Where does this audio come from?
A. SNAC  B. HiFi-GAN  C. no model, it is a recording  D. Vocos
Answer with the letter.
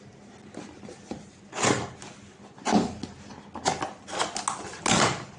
C